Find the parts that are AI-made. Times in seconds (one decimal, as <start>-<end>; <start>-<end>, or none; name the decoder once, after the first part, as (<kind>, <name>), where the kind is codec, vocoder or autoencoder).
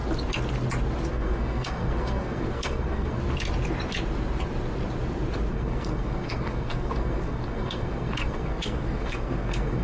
1.1-3.2 (codec, SNAC); 5.5-9.8